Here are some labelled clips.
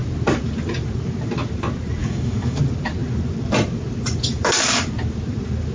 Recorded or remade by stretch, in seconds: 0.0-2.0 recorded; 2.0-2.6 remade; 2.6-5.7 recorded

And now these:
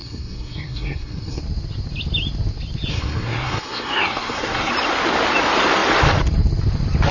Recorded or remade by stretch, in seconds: 0.0-1.4 remade; 1.4-2.9 recorded; 2.9-4.7 remade; 4.7-7.1 recorded

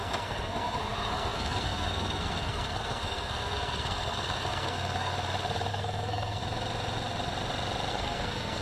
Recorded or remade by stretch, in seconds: 0.0-5.1 remade; 5.1-5.7 recorded; 5.7-6.4 remade; 6.4-7.9 recorded; 7.9-8.6 remade

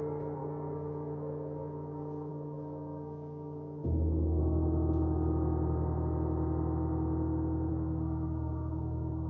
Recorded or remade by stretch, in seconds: 0.0-4.4 remade; 4.4-7.7 recorded; 7.7-9.3 remade

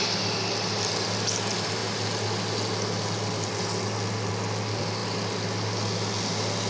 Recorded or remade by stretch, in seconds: 0.0-6.7 recorded